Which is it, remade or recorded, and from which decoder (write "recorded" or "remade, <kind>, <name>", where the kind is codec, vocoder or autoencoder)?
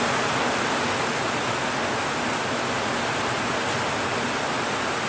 recorded